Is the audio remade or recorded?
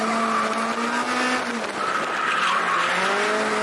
recorded